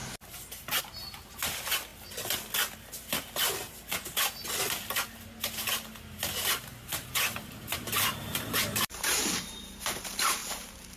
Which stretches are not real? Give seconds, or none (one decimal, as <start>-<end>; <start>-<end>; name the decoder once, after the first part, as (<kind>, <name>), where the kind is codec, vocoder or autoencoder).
0.8-1.9 (vocoder, BigVGAN v2); 6.5-10.4